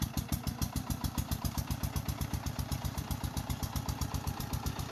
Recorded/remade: remade